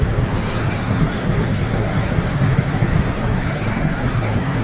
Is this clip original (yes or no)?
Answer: no